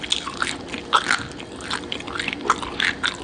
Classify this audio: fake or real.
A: real